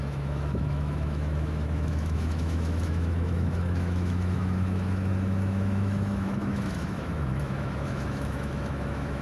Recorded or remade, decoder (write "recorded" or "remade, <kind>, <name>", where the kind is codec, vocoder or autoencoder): remade, autoencoder, DAC-VAE